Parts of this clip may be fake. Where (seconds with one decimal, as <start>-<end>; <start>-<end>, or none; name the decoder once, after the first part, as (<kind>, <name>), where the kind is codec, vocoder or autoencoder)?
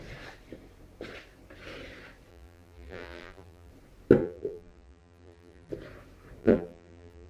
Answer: 2.3-3.7 (vocoder, BigVGAN v2); 4.2-5.7; 6.4-7.3